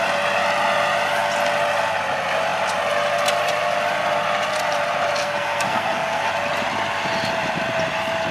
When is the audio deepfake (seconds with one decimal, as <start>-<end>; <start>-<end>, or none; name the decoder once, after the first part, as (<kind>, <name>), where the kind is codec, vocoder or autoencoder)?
5.2-6.3 (codec, SNAC)